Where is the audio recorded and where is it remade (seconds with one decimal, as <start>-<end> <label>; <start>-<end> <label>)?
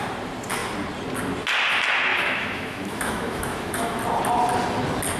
0.0-2.1 recorded; 2.1-4.0 remade; 4.0-5.2 recorded